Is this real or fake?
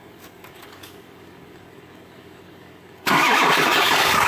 fake